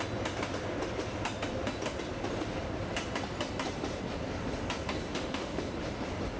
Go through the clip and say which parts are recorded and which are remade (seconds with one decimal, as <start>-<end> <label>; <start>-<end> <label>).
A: 0.0-5.1 recorded; 5.1-5.6 remade; 5.6-6.4 recorded